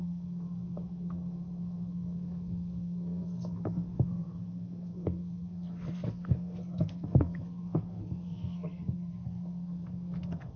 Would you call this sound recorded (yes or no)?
no